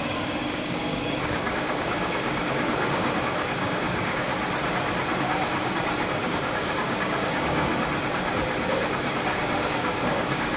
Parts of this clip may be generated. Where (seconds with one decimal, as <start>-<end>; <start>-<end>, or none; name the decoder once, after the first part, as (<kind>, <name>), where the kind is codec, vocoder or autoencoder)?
0.0-4.3 (codec, DAC); 5.2-7.7; 8.7-10.6